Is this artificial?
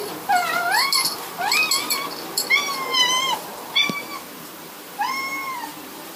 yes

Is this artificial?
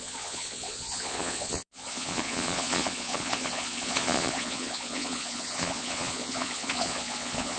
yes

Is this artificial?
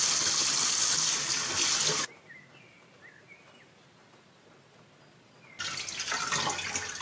no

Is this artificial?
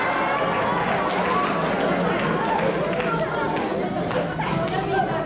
no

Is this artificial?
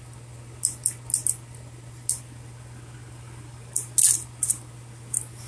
no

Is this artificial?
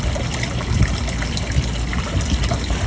no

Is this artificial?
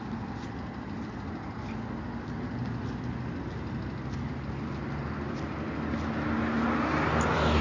no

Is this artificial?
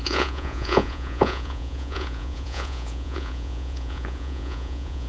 yes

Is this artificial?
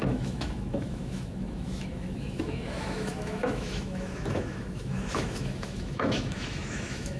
yes